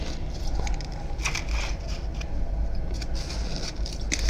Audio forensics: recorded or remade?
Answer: recorded